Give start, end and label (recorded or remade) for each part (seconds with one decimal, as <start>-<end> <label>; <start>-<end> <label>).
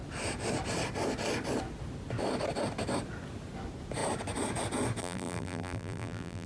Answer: 0.0-5.0 recorded; 5.0-6.5 remade